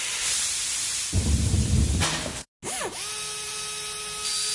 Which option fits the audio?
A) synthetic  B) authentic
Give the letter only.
B